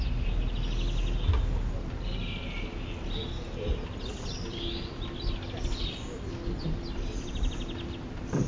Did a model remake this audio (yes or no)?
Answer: no